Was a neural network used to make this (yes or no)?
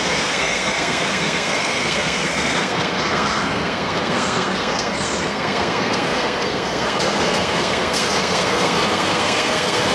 yes